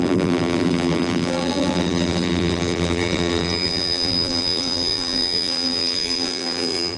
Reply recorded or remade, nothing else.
remade